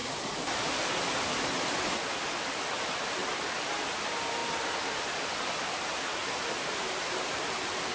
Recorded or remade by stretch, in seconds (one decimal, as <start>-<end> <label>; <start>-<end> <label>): 0.0-6.2 recorded; 6.2-7.9 remade